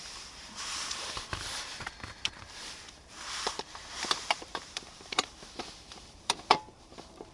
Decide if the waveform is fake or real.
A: fake